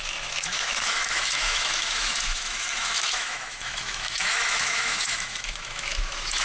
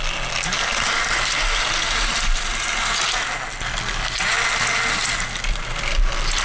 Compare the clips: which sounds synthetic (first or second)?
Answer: first